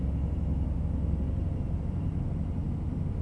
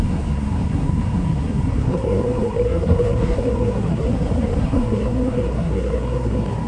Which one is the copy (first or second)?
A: second